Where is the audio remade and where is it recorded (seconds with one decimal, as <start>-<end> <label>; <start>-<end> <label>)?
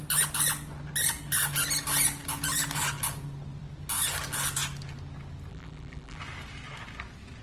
0.0-5.5 recorded; 5.5-6.2 remade; 6.2-7.4 recorded